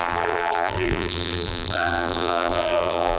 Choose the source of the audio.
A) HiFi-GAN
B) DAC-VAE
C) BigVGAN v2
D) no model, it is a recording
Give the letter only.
C